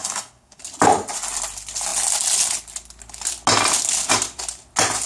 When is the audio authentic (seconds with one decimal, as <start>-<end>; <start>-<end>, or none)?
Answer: 0.6-5.1